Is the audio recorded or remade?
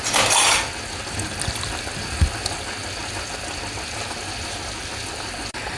recorded